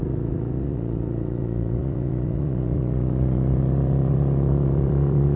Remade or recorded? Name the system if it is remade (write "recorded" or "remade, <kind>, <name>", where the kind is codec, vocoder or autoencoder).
remade, vocoder, Vocos